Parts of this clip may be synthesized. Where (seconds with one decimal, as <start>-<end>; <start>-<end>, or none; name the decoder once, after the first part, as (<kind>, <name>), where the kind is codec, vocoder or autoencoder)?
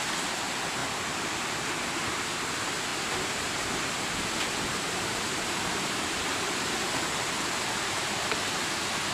2.9-6.9 (vocoder, BigVGAN v2)